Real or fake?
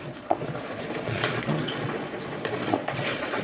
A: fake